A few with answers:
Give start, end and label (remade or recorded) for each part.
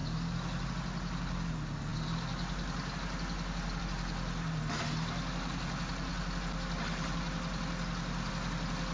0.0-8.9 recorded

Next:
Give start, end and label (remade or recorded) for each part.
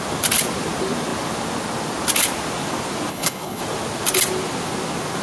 0.0-3.1 recorded; 3.1-3.6 remade; 3.6-5.2 recorded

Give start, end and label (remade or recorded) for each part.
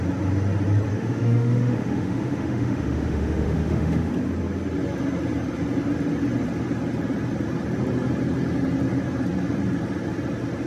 0.0-0.9 recorded; 0.9-4.1 remade; 4.1-10.7 recorded